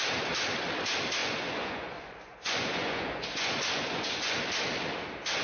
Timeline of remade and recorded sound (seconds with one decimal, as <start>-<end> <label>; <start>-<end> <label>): 0.0-1.2 recorded; 1.2-4.4 remade; 4.4-5.4 recorded